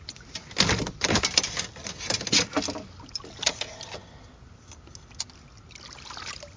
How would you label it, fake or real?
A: real